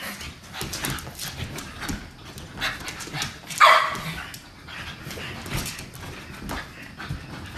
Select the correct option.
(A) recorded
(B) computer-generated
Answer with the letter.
A